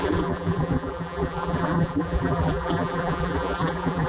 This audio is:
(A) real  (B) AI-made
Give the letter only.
B